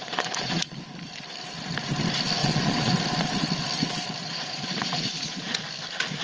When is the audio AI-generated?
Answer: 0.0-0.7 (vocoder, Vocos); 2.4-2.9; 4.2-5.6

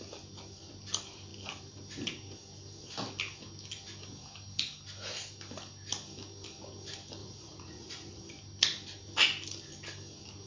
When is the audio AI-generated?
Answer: 7.2-8.2 (vocoder, Vocos)

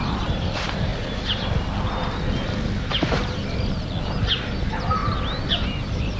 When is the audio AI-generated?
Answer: 0.0-0.9 (vocoder, BigVGAN v2); 2.8-3.4; 4.5-5.0; 5.5-6.2